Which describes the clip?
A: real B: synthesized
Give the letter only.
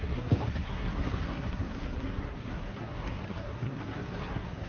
B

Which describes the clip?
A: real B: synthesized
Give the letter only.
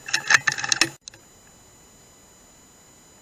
A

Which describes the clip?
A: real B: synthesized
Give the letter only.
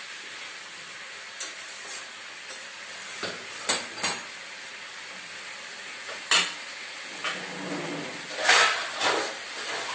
A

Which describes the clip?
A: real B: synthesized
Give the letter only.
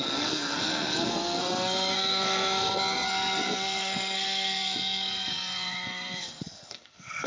B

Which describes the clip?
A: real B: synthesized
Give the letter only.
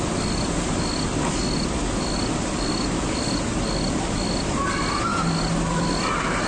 A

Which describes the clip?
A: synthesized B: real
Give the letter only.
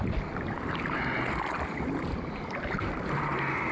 B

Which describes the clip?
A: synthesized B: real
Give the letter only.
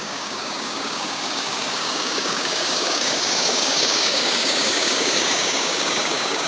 A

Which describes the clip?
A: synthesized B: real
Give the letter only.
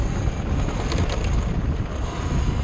B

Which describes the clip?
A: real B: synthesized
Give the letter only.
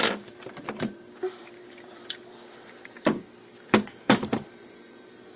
B